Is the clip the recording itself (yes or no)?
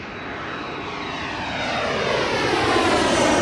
yes